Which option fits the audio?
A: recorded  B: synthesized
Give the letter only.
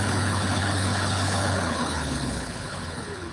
B